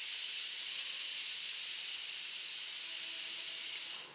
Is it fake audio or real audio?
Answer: fake